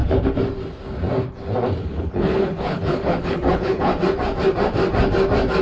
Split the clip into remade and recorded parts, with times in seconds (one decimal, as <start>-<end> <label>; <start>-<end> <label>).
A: 0.0-1.8 recorded; 1.8-3.9 remade; 3.9-5.6 recorded